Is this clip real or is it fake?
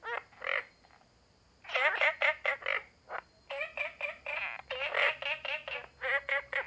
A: real